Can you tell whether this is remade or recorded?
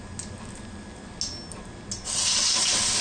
recorded